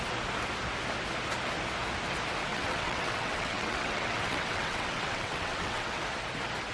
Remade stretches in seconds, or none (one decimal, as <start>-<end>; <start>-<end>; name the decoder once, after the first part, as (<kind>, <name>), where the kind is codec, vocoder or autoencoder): 2.5-6.0 (vocoder, WaveNeXt)